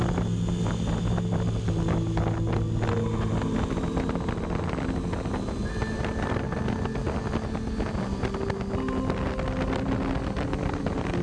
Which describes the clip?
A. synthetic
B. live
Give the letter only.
B